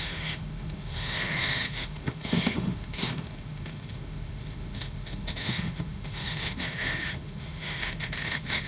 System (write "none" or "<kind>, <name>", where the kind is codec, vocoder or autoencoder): autoencoder, DAC-VAE